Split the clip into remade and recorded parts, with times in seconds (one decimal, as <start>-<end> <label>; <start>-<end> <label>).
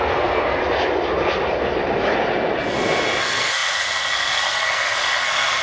0.0-0.6 remade; 0.6-3.2 recorded; 3.2-5.6 remade